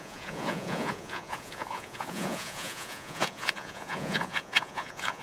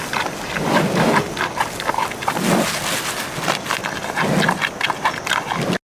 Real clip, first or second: second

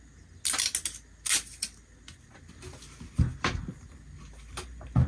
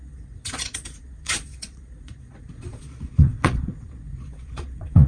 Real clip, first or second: first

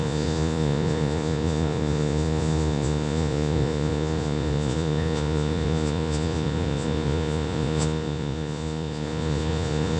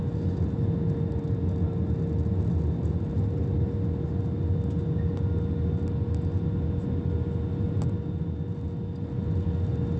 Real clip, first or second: second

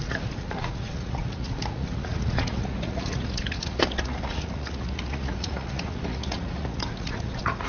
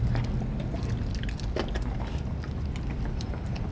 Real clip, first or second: second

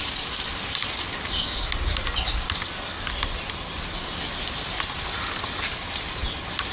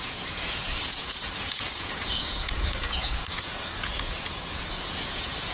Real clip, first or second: first